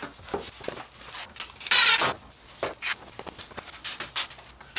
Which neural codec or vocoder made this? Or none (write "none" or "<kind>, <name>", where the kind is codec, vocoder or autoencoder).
none